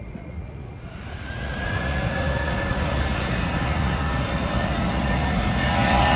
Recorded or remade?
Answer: remade